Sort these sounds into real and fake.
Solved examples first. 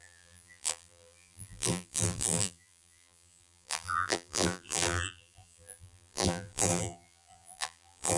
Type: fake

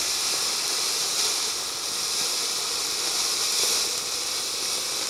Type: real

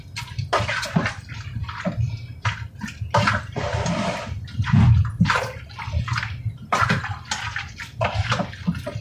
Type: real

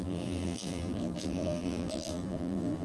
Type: fake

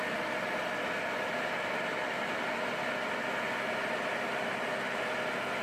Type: real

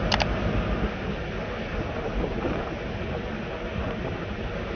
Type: real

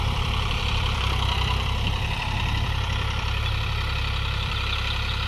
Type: fake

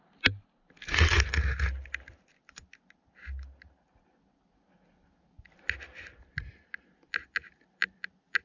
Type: real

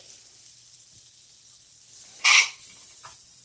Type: real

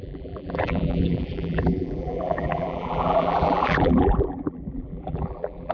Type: fake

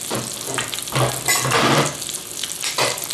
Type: fake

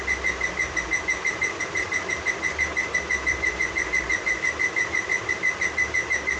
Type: fake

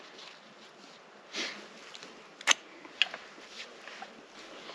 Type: real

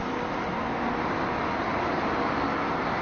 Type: real